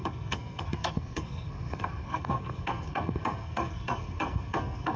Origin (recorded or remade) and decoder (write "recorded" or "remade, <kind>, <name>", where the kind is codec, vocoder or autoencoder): remade, codec, SNAC